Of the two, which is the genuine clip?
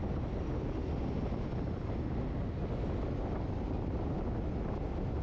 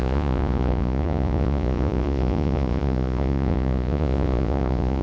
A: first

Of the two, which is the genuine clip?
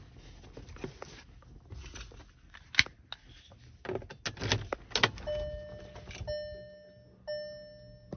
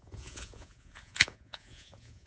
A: first